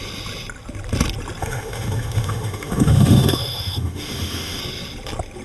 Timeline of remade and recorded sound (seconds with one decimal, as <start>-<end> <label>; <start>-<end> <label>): 0.0-1.4 recorded; 1.4-4.6 remade; 4.6-5.4 recorded